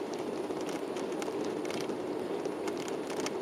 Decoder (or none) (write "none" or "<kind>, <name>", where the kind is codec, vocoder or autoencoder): none